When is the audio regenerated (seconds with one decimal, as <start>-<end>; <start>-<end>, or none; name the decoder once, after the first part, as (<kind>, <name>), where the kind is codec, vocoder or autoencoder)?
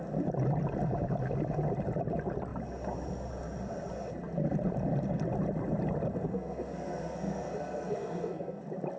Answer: 6.1-8.6 (codec, SNAC)